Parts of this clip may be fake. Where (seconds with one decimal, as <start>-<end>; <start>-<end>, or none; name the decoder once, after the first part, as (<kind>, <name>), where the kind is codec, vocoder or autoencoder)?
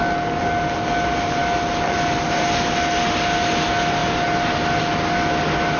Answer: none